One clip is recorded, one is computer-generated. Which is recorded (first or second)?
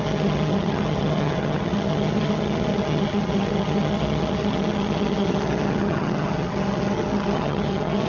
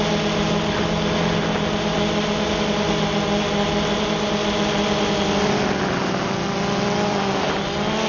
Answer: second